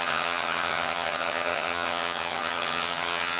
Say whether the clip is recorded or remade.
remade